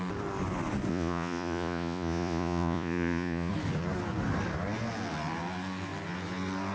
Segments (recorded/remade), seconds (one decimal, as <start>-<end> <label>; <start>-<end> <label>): 0.0-0.9 recorded; 0.9-3.5 remade; 3.5-6.7 recorded